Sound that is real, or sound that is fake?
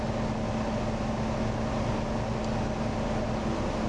real